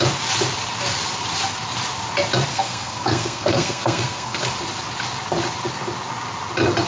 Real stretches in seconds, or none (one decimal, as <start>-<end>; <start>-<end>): 0.0-2.5; 4.4-6.9

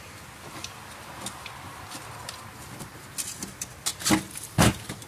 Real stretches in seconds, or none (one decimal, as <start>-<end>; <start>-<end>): 0.0-5.1

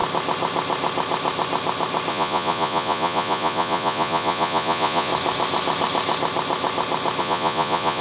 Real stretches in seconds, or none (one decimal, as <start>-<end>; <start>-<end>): 0.0-2.1; 5.1-7.2